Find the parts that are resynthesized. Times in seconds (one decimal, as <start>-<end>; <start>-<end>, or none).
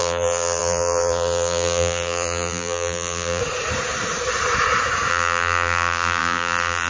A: 0.0-3.4; 5.1-6.9